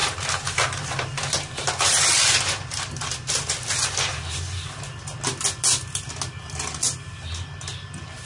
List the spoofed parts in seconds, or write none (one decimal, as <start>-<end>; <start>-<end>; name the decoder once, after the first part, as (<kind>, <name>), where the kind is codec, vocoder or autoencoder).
none